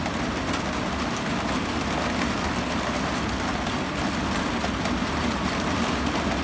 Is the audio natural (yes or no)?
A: yes